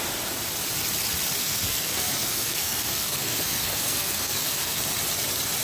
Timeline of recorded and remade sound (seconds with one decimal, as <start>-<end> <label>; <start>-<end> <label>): 0.0-1.4 recorded; 1.4-4.8 remade; 4.8-5.6 recorded